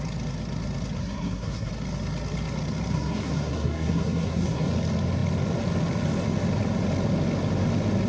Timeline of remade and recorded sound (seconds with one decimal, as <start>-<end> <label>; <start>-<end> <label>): 0.0-1.0 recorded; 1.0-1.7 remade; 1.7-2.9 recorded; 2.9-4.7 remade; 4.7-8.1 recorded